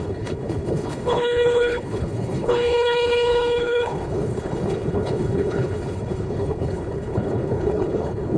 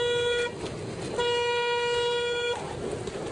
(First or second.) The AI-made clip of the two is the first